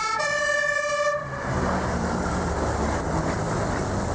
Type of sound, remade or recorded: remade